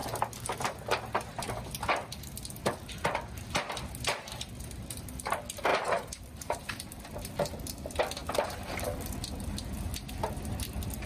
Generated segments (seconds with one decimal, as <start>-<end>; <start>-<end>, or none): 5.7-7.6; 8.2-10.1